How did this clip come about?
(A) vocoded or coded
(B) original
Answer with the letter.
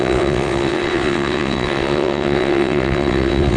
A